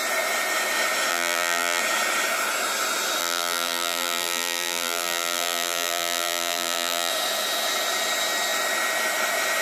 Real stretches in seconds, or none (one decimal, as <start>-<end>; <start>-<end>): 0.0-1.1; 1.8-3.2; 7.1-9.6